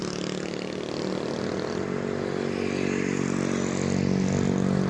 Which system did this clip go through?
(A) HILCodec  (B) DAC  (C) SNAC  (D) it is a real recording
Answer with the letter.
D